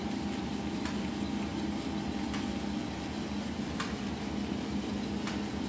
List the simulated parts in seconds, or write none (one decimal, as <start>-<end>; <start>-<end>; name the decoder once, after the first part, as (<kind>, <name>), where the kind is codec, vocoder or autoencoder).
none